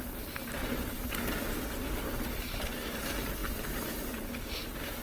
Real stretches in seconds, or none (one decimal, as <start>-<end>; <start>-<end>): 0.0-0.6; 3.0-5.0